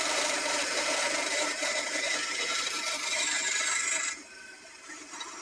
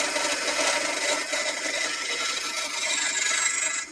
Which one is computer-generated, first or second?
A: first